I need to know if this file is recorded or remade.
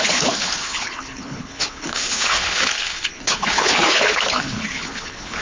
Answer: remade